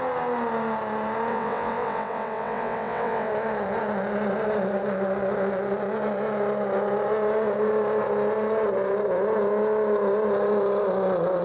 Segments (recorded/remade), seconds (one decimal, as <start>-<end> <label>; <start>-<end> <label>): 0.0-1.3 recorded; 1.3-3.3 remade; 3.3-11.4 recorded